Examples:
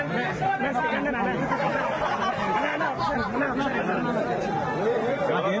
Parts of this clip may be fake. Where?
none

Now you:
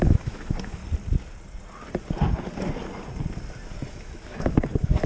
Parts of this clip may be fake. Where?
0.0-0.8; 3.9-5.1